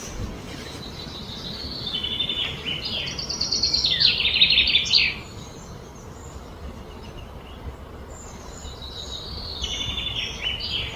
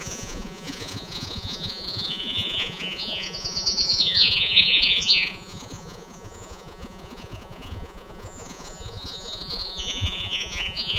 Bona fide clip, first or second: first